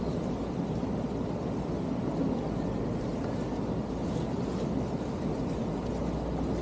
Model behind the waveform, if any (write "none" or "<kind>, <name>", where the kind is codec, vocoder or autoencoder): none